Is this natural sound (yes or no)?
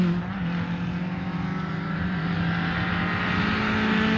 yes